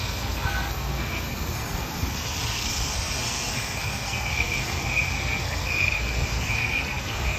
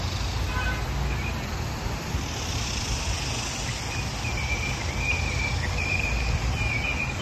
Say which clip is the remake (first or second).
first